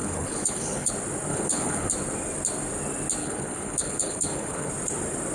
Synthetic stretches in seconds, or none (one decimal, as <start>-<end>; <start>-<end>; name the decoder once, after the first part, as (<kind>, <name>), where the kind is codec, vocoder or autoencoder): 0.0-0.9 (codec, HILCodec); 1.3-1.9; 3.2-4.7